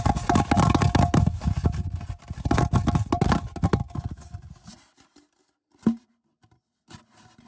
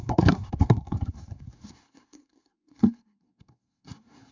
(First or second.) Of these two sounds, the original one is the first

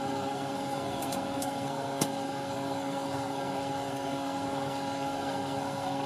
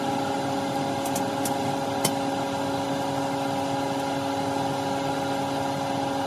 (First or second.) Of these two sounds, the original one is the second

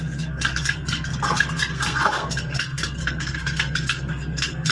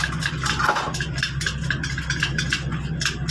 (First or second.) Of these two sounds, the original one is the second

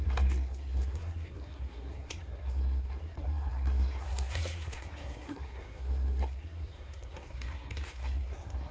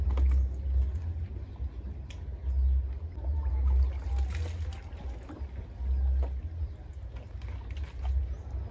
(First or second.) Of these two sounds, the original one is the second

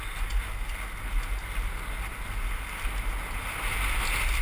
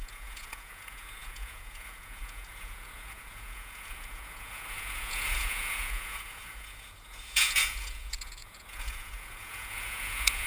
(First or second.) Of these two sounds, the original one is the first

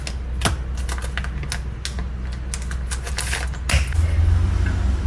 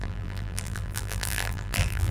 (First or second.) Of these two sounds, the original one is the first